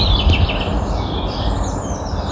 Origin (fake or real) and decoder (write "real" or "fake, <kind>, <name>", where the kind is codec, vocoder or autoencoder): real